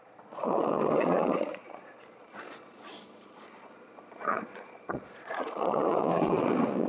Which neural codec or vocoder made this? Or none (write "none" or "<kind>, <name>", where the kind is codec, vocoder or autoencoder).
vocoder, Vocos